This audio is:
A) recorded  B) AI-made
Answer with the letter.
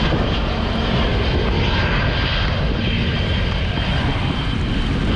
A